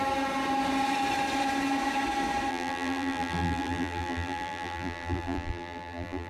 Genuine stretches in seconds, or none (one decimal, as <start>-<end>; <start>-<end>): 0.0-2.5